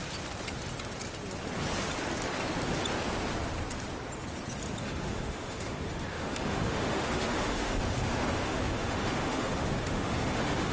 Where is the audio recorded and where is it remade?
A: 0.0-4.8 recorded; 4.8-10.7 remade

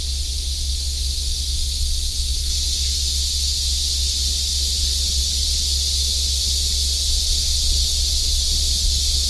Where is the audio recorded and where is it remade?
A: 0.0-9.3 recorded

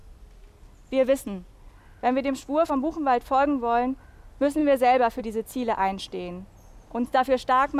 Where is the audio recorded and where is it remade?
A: 0.0-7.8 recorded

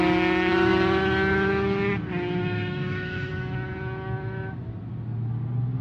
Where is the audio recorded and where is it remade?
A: 0.0-2.4 recorded; 2.4-3.3 remade; 3.3-5.8 recorded